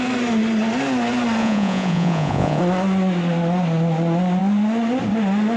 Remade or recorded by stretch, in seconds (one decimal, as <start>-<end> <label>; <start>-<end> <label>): 0.0-1.4 recorded; 1.4-2.6 remade; 2.6-5.6 recorded